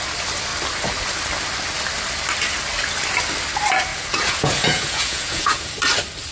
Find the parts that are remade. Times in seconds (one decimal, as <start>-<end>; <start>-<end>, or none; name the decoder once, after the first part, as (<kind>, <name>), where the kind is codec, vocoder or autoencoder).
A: 3.9-5.7 (vocoder, Vocos)